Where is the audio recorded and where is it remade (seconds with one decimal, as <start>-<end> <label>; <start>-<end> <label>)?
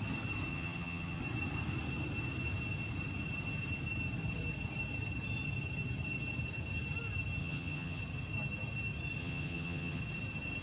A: 0.0-0.5 recorded; 0.5-1.2 remade; 1.2-7.4 recorded; 7.4-8.0 remade; 8.0-9.2 recorded; 9.2-10.0 remade; 10.0-10.6 recorded